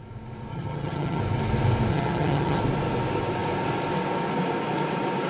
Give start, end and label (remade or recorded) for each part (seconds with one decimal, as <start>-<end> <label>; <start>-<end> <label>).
0.0-0.5 recorded; 0.5-1.2 remade; 1.2-1.9 recorded; 1.9-2.6 remade; 2.6-5.3 recorded